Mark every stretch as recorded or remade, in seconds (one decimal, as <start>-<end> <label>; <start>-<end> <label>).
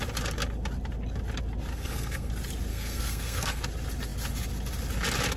0.0-1.7 recorded; 1.7-2.3 remade; 2.3-2.7 recorded; 2.7-3.6 remade; 3.6-5.4 recorded